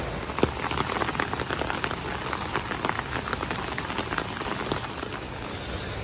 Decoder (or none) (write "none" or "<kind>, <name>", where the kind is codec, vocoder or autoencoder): none